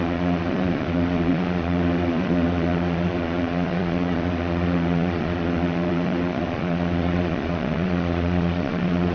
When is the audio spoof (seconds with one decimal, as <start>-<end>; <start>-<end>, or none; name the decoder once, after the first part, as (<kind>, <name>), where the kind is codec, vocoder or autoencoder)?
0.0-9.1 (vocoder, Vocos)